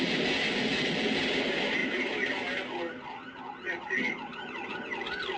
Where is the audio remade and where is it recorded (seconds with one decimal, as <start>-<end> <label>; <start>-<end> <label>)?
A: 0.0-5.4 recorded